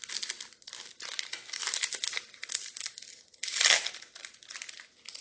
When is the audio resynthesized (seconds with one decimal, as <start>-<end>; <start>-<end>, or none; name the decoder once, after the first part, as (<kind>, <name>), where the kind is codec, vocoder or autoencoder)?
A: none